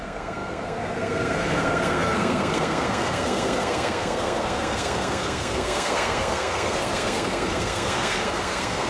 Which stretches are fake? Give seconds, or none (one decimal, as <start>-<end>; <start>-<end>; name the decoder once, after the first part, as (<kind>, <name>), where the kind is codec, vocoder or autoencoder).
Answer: 0.0-8.9 (codec, SNAC)